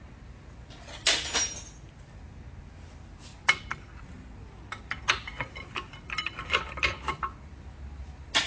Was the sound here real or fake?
real